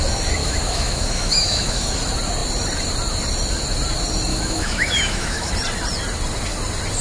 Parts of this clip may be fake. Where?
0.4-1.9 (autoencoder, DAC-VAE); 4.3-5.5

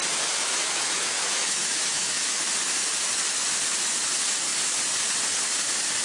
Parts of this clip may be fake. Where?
0.0-2.5 (autoencoder, DAC-VAE)

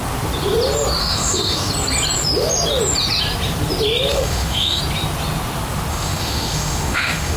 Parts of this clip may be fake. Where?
1.0-1.7 (autoencoder, DAC-VAE); 4.1-4.8; 5.9-7.4

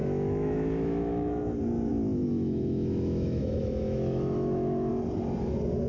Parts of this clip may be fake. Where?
0.0-1.5 (autoencoder, DAC-VAE); 1.9-4.9

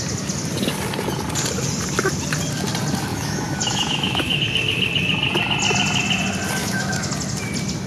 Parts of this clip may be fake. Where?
3.1-4.4 (autoencoder, DAC-VAE); 6.6-7.1